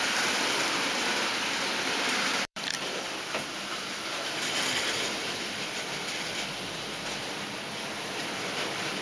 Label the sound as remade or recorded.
remade